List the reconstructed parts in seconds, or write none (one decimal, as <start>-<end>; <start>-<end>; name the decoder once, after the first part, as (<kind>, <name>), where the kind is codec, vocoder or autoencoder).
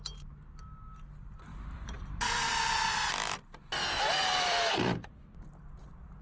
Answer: 1.5-2.4 (vocoder, BigVGAN v2); 3.8-5.4